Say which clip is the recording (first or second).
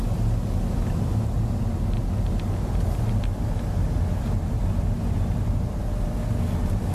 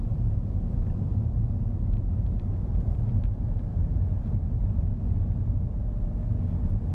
first